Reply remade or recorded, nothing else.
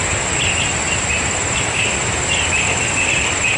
recorded